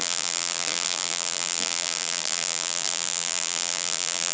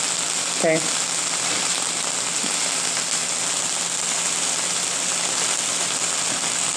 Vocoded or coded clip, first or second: first